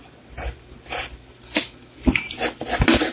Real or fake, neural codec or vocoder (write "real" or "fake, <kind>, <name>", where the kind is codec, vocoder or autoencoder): real